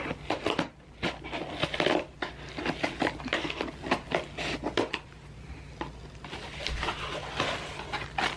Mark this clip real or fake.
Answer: real